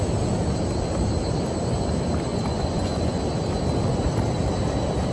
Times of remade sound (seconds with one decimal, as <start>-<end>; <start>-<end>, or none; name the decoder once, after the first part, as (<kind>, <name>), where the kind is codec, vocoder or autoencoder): 2.3-3.2 (vocoder, Vocos)